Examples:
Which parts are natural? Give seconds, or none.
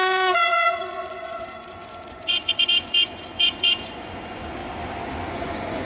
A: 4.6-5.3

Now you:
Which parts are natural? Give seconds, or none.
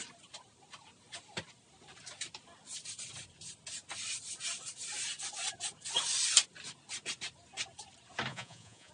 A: 0.0-8.3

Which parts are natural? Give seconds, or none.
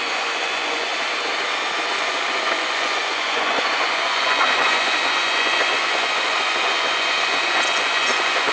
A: 0.9-2.0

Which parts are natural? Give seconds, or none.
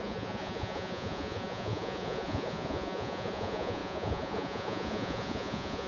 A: none